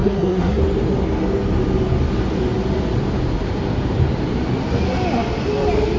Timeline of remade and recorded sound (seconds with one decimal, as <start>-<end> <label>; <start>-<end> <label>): 0.0-0.6 remade; 0.6-6.0 recorded